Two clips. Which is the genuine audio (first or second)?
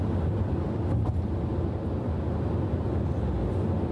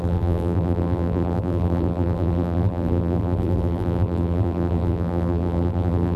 first